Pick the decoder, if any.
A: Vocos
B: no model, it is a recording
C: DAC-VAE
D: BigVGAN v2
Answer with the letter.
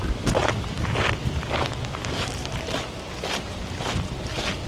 D